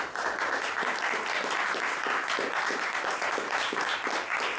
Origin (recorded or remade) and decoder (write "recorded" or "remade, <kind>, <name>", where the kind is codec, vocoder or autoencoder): recorded